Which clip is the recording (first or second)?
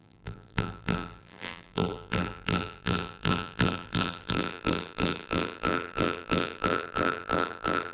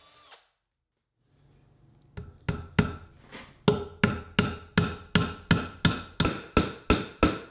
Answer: second